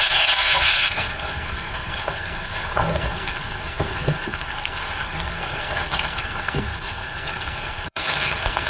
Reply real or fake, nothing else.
fake